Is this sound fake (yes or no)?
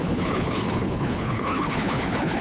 yes